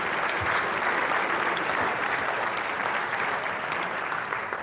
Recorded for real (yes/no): yes